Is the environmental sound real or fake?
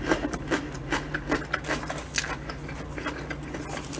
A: real